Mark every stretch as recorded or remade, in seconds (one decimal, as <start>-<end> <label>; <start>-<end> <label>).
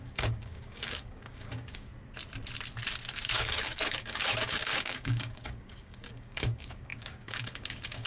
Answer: 0.0-1.9 remade; 1.9-3.1 recorded; 3.1-8.1 remade